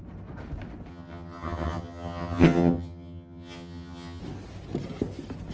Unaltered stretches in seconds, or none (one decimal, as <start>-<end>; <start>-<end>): 0.0-0.9; 4.2-5.5